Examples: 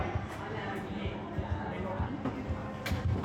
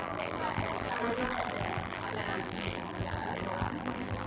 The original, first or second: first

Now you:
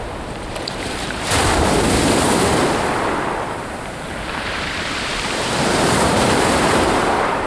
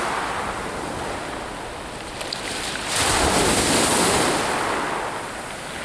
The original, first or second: second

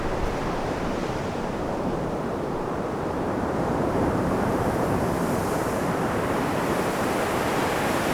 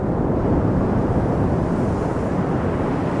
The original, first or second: second